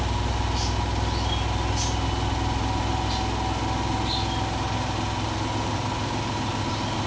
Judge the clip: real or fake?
real